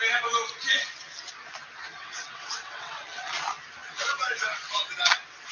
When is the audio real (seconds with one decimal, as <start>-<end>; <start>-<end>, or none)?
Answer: 0.0-2.0; 3.0-5.5